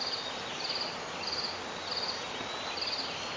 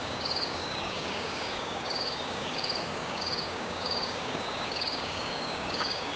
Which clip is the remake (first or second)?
second